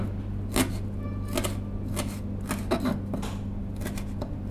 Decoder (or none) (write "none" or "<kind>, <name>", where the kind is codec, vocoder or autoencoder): none